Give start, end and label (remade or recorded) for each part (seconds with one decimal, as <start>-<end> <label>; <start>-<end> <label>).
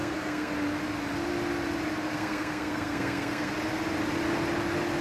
0.0-0.5 remade; 0.5-2.1 recorded; 2.1-3.5 remade; 3.5-5.0 recorded